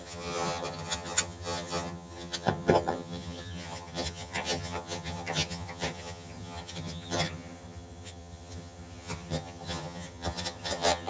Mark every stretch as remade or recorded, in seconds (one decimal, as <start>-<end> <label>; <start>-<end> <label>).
0.0-11.1 remade